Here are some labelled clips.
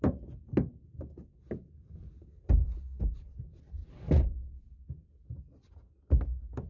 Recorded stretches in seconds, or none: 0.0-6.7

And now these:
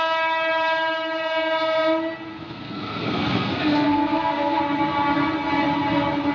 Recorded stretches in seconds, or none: 0.0-2.3; 4.6-6.3

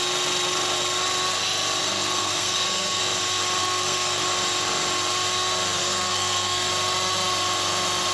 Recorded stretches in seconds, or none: 0.0-1.8; 3.0-3.6; 4.2-5.8; 6.7-8.1

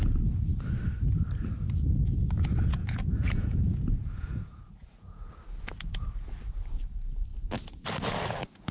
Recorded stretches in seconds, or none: 0.0-2.8; 5.4-8.7

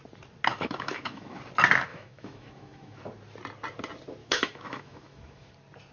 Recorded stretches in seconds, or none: 0.0-0.5; 1.4-1.9; 3.0-4.2; 5.5-5.9

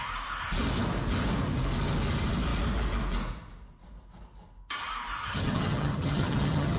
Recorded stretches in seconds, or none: 0.0-5.2

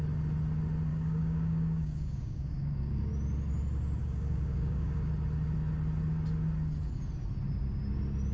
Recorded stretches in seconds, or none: 0.0-0.9; 3.1-4.0; 5.1-8.3

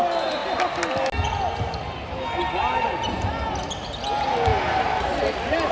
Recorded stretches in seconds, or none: 0.0-5.7